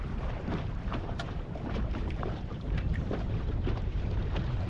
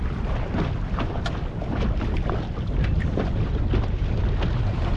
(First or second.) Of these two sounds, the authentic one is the second